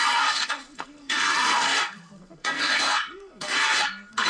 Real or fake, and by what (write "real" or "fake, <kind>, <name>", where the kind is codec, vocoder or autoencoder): fake, codec, SNAC